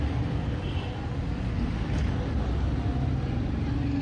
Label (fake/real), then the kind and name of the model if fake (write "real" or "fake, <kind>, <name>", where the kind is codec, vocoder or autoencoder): real